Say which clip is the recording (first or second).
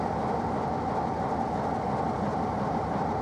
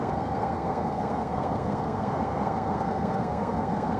first